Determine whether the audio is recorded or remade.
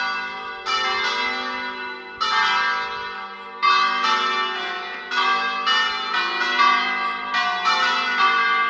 recorded